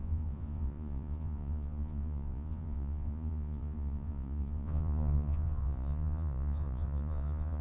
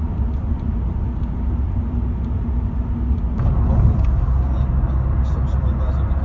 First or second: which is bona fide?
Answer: second